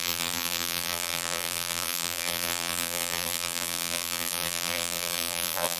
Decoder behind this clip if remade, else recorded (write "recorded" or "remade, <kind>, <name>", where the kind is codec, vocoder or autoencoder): remade, vocoder, BigVGAN v2